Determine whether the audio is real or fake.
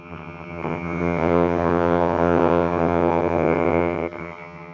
fake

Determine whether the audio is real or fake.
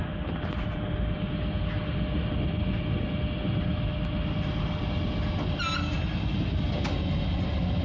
real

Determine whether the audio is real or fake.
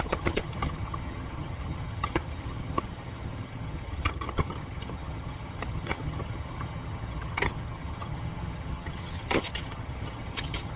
fake